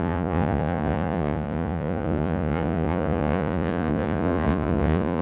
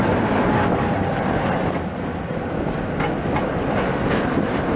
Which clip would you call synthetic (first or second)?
first